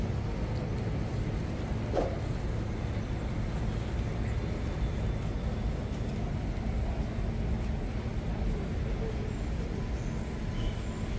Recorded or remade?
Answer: recorded